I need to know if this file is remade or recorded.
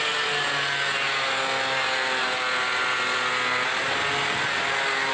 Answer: recorded